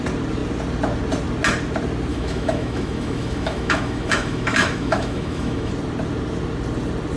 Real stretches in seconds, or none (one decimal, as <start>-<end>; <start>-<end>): 0.0-2.1; 5.7-7.2